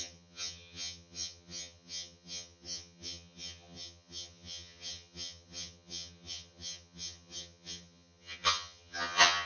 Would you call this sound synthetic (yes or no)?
yes